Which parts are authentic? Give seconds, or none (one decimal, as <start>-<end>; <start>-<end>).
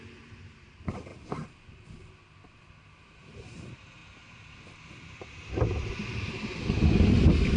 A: 1.1-3.2; 4.0-5.0